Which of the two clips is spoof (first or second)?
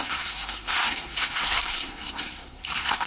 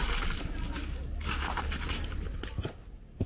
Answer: first